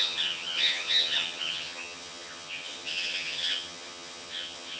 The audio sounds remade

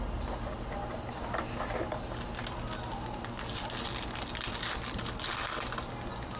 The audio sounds recorded